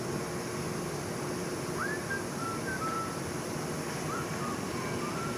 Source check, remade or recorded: recorded